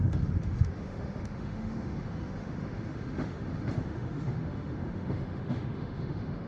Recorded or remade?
remade